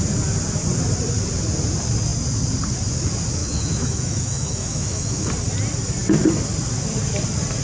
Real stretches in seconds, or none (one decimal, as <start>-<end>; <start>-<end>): 0.0-3.4; 5.3-7.6